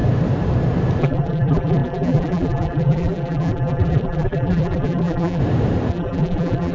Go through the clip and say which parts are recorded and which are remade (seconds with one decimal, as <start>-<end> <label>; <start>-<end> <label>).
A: 0.0-1.0 recorded; 1.0-5.4 remade; 5.4-5.9 recorded; 5.9-6.7 remade